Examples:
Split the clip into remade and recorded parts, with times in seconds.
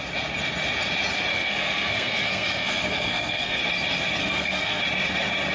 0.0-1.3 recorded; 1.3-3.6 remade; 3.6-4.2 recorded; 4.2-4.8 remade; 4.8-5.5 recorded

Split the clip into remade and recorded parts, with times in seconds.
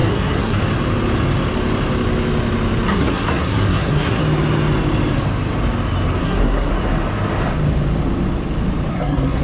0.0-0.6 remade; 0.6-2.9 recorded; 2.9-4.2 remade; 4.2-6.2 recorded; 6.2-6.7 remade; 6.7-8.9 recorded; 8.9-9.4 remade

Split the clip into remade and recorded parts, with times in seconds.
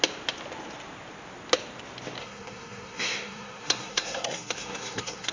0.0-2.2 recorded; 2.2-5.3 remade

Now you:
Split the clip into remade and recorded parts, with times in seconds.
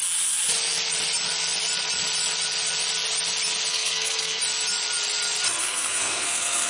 0.0-3.7 recorded; 3.7-4.4 remade; 4.4-5.6 recorded; 5.6-6.7 remade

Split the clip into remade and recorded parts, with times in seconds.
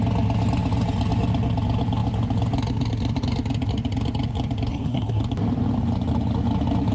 0.0-4.7 recorded; 4.7-5.2 remade; 5.2-6.9 recorded